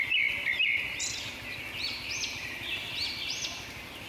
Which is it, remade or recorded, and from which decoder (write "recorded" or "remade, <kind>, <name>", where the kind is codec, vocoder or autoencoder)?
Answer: recorded